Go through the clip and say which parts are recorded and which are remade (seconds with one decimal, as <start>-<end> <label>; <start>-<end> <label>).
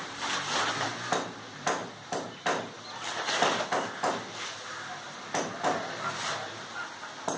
0.0-7.4 recorded